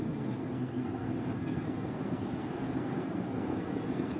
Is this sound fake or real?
fake